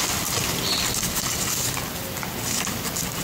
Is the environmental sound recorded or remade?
recorded